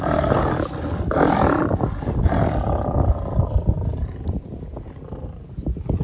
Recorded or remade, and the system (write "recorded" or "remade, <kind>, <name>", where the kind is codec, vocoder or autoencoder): recorded